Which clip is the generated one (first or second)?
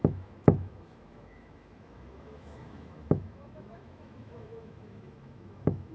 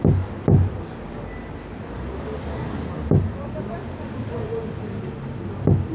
first